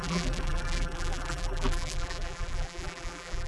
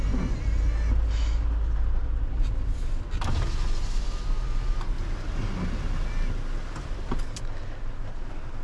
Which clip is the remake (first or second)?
first